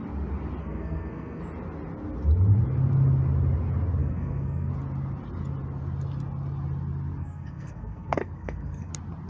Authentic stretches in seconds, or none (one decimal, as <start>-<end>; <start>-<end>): 0.0-0.6; 1.4-4.0; 4.7-7.2; 8.9-9.3